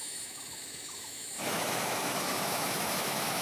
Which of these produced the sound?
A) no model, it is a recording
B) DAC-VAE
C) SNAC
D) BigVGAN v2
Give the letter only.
B